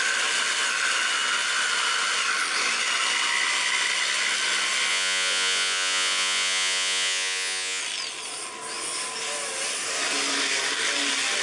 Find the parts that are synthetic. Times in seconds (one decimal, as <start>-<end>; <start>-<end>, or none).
4.9-7.8